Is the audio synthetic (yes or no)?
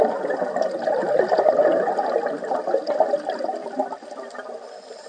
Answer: no